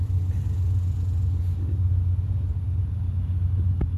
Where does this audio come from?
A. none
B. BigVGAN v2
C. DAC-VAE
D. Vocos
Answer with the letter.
A